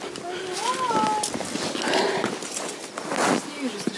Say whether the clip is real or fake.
real